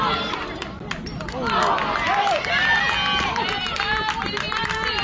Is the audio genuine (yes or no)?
yes